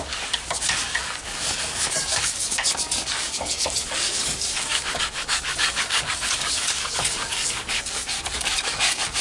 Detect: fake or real fake